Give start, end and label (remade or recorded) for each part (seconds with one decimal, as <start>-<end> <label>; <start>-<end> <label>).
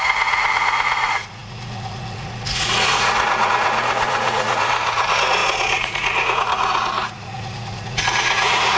0.0-8.8 remade